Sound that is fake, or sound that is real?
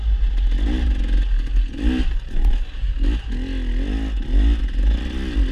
real